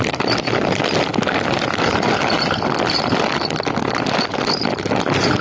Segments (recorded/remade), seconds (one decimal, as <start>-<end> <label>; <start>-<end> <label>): 0.0-5.4 recorded